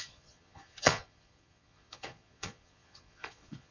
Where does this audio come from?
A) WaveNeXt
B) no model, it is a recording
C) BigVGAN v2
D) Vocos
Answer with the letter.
D